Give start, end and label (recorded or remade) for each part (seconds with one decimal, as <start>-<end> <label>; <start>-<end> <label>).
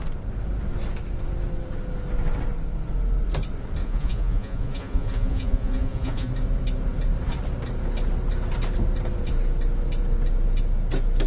0.0-3.8 recorded; 3.8-6.3 remade; 6.3-11.3 recorded